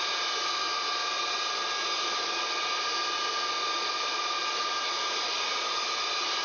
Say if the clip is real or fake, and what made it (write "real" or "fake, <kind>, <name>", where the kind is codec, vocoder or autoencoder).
real